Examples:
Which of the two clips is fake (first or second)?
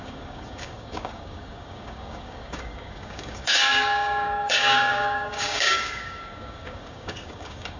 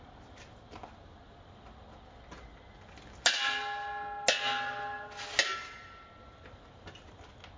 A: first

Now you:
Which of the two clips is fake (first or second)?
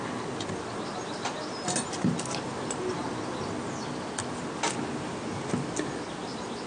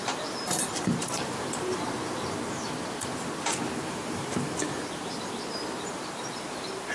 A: second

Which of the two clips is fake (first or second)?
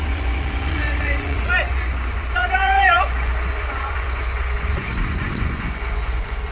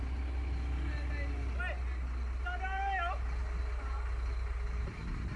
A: first